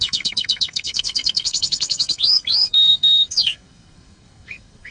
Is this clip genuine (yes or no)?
no